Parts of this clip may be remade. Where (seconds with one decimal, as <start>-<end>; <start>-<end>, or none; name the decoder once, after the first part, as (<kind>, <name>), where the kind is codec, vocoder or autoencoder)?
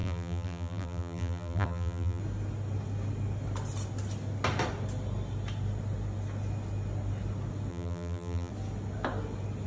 0.0-2.2 (vocoder, BigVGAN v2); 7.7-8.5